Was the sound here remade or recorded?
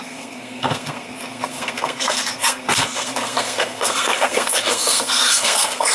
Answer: remade